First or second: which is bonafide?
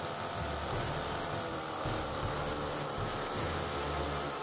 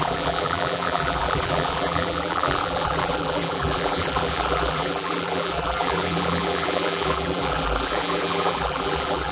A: first